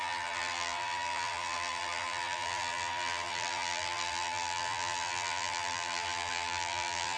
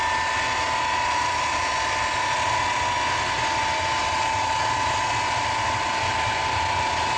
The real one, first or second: second